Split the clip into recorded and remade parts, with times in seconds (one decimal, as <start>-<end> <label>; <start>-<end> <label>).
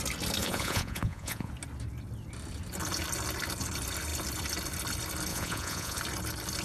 0.0-0.4 recorded; 0.4-1.5 remade; 1.5-5.3 recorded; 5.3-6.0 remade; 6.0-6.6 recorded